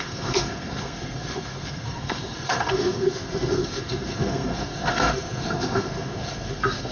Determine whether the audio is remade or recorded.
remade